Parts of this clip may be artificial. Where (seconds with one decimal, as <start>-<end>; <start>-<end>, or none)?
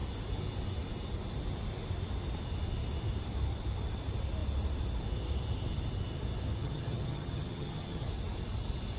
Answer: 6.6-8.1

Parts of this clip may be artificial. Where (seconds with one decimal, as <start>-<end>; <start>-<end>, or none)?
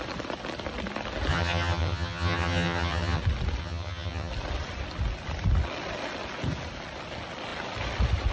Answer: 1.3-3.2; 3.6-4.3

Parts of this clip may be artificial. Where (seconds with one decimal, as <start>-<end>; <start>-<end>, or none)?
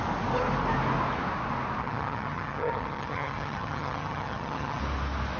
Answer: 1.8-4.8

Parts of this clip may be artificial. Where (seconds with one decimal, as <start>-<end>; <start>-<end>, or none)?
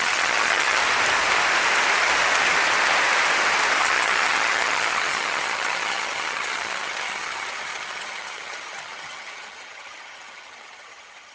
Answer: 0.0-0.8; 3.8-11.3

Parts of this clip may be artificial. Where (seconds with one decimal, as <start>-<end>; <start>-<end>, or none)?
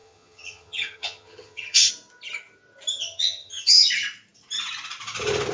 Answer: 0.0-1.9; 2.9-3.8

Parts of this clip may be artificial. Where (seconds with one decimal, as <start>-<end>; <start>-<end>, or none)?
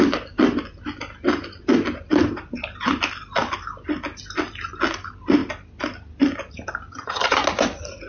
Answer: 6.9-7.4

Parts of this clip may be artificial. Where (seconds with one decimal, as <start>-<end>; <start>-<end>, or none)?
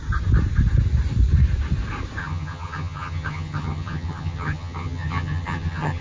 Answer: 2.2-6.0